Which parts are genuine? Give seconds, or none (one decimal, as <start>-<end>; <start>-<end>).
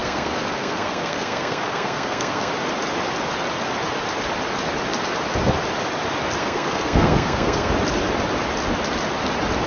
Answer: 2.5-6.4; 7.7-9.7